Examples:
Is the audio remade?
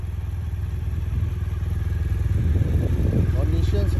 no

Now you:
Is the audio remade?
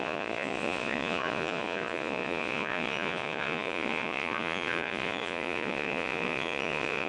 yes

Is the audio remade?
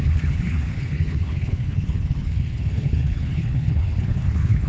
yes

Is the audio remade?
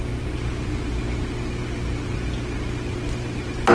no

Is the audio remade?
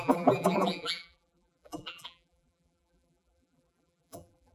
yes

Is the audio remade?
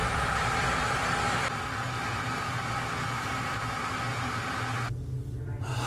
no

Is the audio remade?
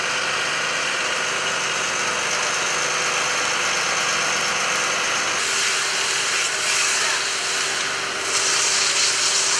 no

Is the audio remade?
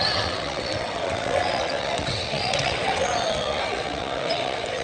yes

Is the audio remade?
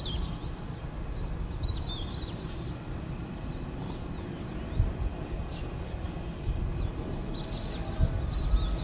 no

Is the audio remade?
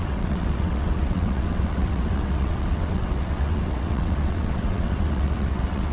yes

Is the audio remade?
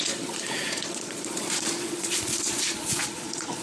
yes